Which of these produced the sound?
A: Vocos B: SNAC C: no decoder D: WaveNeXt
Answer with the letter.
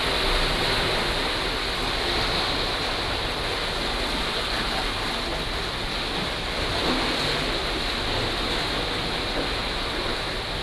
C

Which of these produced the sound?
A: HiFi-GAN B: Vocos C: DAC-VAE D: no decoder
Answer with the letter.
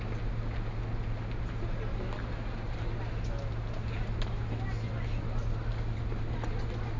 D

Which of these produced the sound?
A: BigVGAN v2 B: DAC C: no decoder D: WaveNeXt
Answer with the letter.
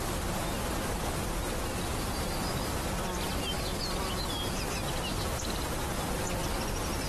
C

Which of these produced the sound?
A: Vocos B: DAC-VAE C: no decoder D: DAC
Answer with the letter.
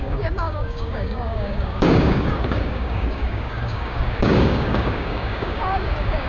D